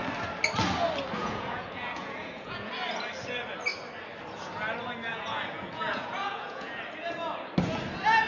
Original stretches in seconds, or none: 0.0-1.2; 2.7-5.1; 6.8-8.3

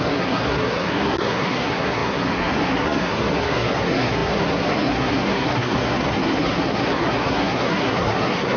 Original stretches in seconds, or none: none